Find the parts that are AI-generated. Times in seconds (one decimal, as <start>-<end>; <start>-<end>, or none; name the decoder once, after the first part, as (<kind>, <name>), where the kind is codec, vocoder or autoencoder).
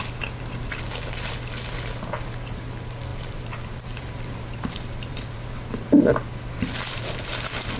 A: 3.1-7.3 (vocoder, BigVGAN v2)